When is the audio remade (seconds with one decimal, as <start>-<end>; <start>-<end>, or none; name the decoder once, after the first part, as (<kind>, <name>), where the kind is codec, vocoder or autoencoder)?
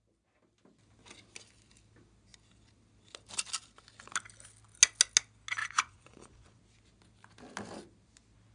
5.6-6.6 (vocoder, Vocos)